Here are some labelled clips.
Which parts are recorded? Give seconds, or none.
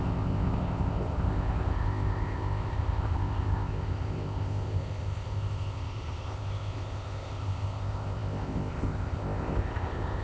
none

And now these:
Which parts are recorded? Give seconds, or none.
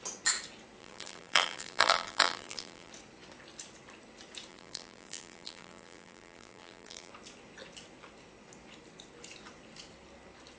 0.0-0.8; 2.9-4.5; 7.1-10.6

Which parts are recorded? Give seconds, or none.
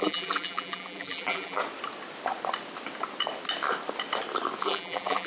1.6-4.6